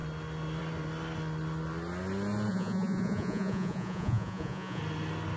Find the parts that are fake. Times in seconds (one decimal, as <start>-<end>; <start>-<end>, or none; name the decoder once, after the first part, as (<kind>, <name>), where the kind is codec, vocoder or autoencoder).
2.5-4.8 (vocoder, Vocos)